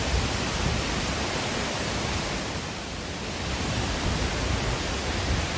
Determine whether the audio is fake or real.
real